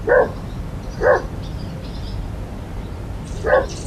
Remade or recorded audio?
recorded